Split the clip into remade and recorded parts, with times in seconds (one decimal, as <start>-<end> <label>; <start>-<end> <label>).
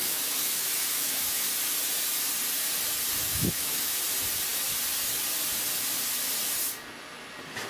0.0-1.5 remade; 1.5-3.3 recorded; 3.3-4.0 remade; 4.0-7.7 recorded